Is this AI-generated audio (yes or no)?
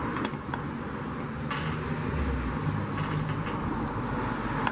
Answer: no